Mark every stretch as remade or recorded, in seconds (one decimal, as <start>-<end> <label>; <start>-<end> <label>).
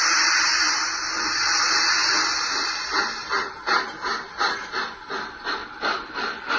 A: 0.0-6.6 recorded